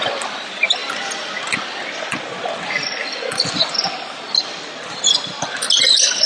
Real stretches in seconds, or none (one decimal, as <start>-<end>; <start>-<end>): 0.0-6.3